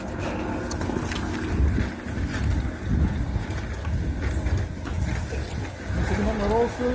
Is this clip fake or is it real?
real